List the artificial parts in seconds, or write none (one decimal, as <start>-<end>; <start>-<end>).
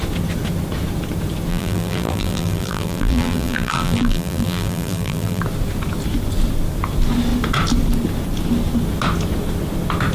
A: 1.5-5.4